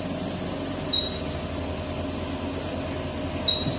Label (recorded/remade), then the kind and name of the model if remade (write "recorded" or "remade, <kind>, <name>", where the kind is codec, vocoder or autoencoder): recorded